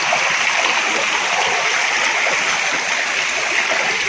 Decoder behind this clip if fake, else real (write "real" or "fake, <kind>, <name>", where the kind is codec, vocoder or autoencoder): real